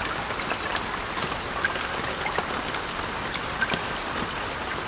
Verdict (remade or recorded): recorded